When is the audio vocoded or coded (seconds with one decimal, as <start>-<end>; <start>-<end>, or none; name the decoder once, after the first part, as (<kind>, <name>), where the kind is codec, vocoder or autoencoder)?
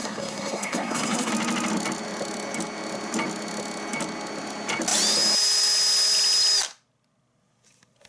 0.0-1.3 (codec, SNAC)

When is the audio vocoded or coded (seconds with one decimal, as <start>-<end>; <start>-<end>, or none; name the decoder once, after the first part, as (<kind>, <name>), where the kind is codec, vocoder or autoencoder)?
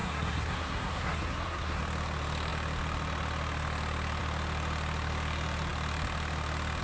0.0-1.8 (codec, SNAC)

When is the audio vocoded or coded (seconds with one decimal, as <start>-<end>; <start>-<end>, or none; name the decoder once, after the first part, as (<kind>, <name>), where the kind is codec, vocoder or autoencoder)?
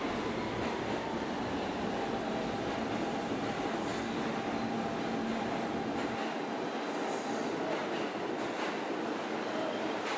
none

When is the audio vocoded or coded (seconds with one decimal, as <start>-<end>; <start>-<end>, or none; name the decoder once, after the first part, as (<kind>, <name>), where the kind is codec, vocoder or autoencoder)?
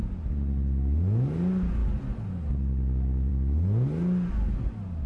none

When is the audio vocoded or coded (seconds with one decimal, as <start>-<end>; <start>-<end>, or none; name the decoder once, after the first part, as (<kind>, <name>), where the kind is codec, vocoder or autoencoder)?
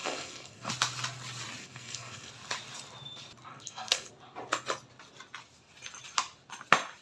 0.0-0.7 (codec, SNAC); 1.6-2.3; 3.5-4.1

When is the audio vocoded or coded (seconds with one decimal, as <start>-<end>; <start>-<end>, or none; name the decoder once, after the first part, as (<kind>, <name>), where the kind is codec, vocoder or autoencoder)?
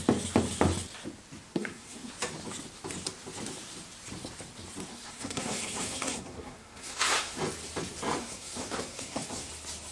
1.5-2.1 (codec, SNAC); 4.9-7.4; 8.2-9.5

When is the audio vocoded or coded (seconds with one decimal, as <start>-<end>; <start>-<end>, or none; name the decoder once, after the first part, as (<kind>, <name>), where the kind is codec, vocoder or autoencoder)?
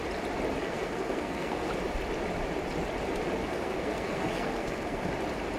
0.6-1.7 (codec, SNAC); 3.4-5.1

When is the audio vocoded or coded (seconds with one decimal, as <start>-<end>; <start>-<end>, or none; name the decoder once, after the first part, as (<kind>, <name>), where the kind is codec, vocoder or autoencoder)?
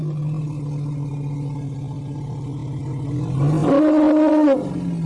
none